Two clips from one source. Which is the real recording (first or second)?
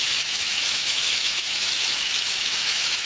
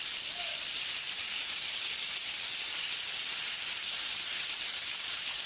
second